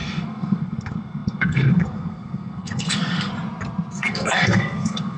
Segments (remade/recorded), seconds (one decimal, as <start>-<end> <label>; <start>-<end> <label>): 0.0-3.3 remade; 3.3-3.9 recorded; 3.9-5.2 remade

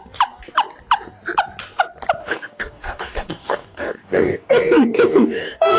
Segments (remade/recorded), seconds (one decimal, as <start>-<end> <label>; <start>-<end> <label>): 0.0-2.2 recorded; 2.2-5.8 remade

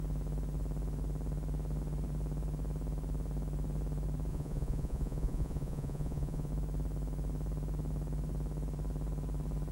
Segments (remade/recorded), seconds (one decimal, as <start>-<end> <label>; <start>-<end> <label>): 0.0-4.3 recorded; 4.3-6.5 remade; 6.5-9.7 recorded

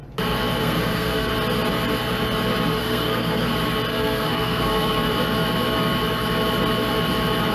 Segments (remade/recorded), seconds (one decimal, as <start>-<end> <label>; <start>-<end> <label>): 0.0-0.6 recorded; 0.6-1.3 remade; 1.3-2.8 recorded; 2.8-3.5 remade; 3.5-3.9 recorded; 3.9-5.1 remade; 5.1-7.5 recorded

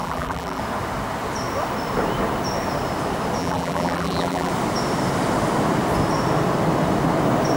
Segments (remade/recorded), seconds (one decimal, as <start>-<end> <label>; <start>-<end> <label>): 0.0-0.6 remade; 0.6-3.4 recorded; 3.4-4.5 remade; 4.5-7.6 recorded

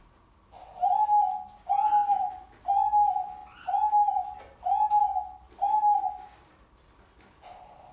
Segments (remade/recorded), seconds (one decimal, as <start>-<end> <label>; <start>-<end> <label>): 0.0-7.9 recorded